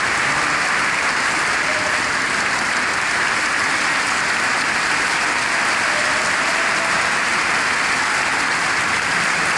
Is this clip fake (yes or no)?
no